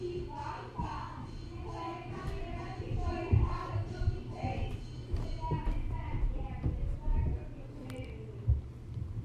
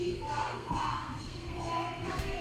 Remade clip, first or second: second